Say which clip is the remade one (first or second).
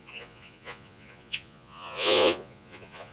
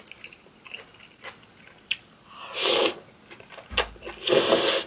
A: first